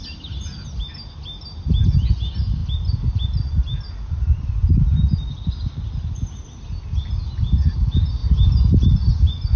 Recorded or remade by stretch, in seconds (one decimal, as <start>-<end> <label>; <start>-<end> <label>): 0.0-9.6 recorded